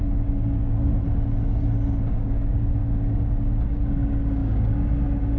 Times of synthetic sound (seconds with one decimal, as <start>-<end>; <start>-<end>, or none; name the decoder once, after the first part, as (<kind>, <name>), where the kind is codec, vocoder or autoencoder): 0.0-0.9 (codec, DAC); 2.0-2.8; 3.7-5.4